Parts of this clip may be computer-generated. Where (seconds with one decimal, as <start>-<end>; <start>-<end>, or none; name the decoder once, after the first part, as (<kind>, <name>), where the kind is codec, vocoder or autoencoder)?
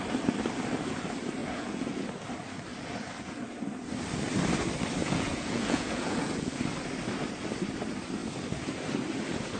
1.4-2.0 (vocoder, Vocos); 5.0-6.6